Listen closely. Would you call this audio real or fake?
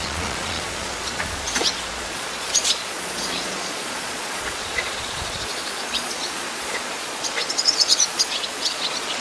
fake